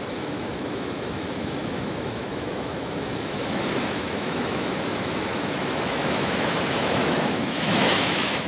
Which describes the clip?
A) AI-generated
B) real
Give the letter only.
A